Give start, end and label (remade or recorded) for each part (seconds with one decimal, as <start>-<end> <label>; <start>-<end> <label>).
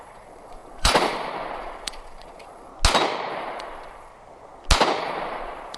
0.0-2.7 remade; 2.7-3.3 recorded; 3.3-4.1 remade; 4.1-5.0 recorded; 5.0-5.8 remade